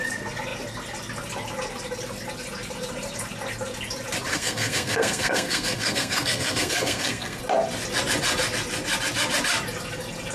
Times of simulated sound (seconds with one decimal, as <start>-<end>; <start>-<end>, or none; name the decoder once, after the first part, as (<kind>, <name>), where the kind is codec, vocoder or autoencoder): 4.3-7.4 (codec, SNAC)